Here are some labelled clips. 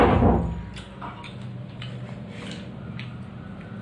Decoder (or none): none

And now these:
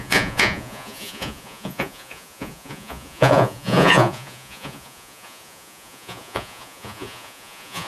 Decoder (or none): vocoder, Vocos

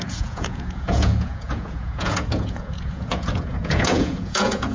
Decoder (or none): vocoder, Vocos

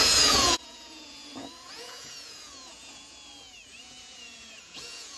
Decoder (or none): vocoder, Vocos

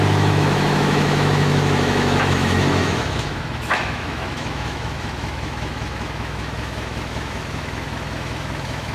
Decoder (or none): autoencoder, DAC-VAE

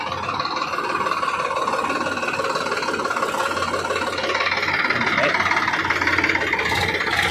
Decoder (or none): none